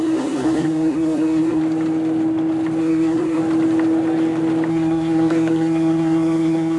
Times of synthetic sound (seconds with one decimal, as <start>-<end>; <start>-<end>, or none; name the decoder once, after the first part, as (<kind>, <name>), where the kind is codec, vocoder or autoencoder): 0.0-1.6 (codec, SNAC); 2.8-3.4; 4.7-6.8